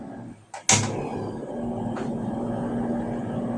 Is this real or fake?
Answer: real